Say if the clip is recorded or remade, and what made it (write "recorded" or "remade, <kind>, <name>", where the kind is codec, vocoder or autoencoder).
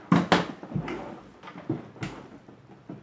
recorded